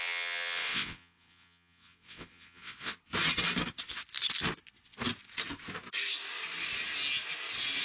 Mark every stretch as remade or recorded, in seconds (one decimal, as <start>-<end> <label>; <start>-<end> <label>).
0.0-3.0 remade; 3.0-7.8 recorded